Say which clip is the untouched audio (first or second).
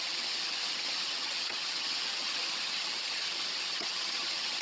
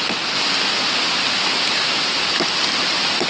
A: second